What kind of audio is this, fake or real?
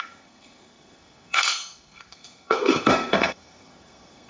fake